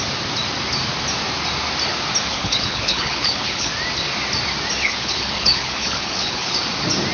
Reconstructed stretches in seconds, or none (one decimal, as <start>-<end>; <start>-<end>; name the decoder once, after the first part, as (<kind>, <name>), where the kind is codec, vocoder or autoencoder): 2.3-3.7 (codec, HILCodec); 4.8-6.5